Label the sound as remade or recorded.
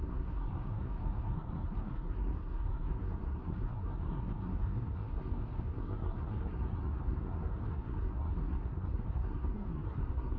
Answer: remade